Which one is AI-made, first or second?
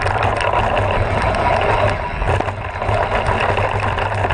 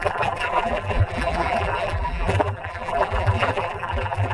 second